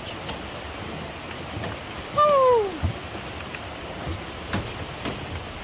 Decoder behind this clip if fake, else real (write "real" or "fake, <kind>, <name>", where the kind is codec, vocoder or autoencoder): real